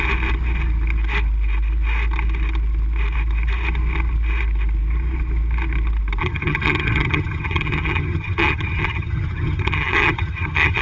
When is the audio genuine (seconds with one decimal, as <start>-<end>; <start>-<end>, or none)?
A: 0.0-6.2